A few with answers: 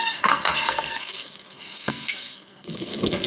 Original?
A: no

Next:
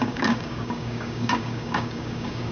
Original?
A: no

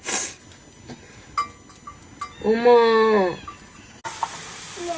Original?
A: yes